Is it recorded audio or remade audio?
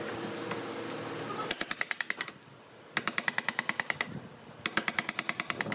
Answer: recorded